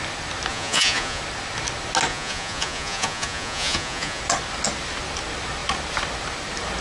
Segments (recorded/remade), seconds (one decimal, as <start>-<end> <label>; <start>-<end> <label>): 0.0-0.5 recorded; 0.5-1.2 remade; 1.2-2.1 recorded; 2.1-4.2 remade; 4.2-6.8 recorded